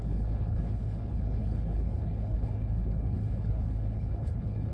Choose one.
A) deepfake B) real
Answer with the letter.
A